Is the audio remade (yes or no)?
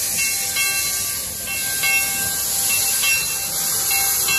no